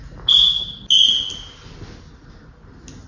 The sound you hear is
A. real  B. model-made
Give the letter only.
A